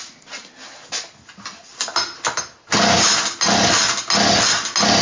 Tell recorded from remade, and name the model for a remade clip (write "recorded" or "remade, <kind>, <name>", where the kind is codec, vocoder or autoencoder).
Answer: recorded